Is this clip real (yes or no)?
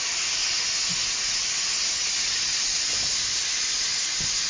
yes